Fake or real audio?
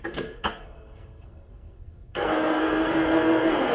fake